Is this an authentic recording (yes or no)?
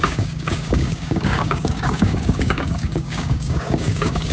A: no